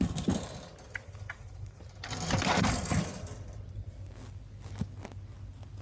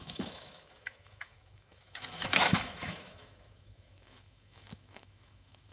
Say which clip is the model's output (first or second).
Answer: second